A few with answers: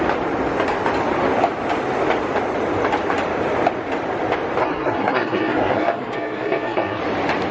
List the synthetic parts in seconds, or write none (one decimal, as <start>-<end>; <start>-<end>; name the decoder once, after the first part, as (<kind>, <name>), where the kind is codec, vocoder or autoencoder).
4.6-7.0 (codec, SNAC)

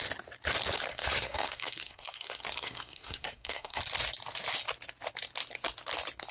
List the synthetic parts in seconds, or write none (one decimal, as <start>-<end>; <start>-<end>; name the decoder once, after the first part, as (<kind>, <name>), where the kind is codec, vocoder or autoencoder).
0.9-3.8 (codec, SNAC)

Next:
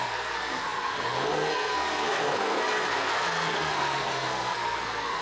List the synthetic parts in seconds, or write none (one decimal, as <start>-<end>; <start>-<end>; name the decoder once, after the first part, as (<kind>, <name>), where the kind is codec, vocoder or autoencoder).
0.0-5.2 (codec, SNAC)

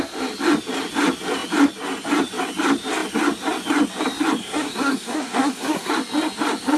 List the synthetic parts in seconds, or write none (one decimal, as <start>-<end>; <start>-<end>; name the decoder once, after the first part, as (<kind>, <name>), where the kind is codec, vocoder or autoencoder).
4.4-5.9 (codec, SNAC)

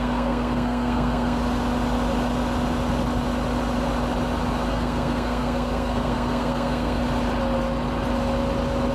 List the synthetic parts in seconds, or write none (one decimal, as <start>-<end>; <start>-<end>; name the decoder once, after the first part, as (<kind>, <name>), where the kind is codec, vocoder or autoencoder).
0.0-1.4 (codec, SNAC); 4.7-7.0

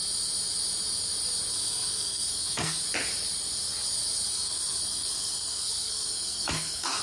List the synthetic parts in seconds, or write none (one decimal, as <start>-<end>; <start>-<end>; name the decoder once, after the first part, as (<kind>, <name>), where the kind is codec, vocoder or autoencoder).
1.5-2.8 (codec, SNAC); 4.3-7.0

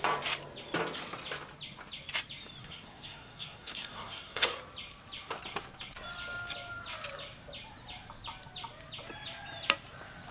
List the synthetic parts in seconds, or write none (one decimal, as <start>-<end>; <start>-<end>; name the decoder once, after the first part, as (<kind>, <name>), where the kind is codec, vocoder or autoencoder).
2.6-4.6 (codec, SNAC)